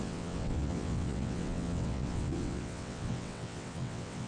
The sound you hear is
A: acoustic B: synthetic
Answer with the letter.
B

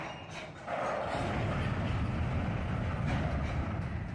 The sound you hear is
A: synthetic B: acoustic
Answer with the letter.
B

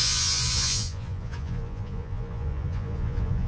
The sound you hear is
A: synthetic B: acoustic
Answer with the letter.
A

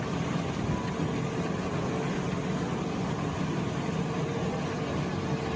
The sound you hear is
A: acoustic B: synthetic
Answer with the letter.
A